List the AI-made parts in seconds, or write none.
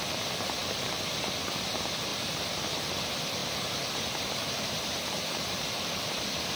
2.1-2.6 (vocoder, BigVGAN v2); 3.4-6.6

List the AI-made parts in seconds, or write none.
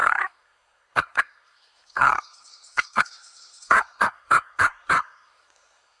0.0-6.0 (codec, SNAC)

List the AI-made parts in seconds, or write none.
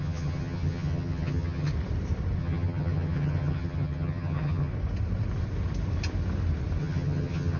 0.0-1.7 (vocoder, HiFi-GAN); 2.4-4.7; 6.8-7.6